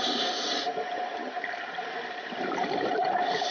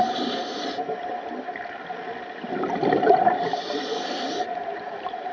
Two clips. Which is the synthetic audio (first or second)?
first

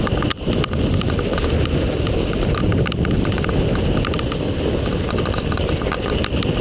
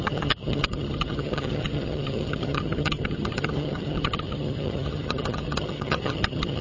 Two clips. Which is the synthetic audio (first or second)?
second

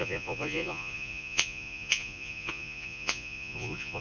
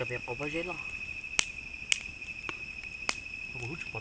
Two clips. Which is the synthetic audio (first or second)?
first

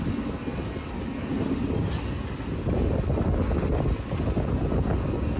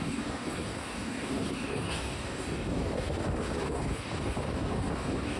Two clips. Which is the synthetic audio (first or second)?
second